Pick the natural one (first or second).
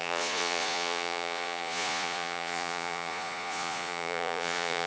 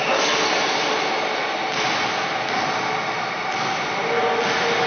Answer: second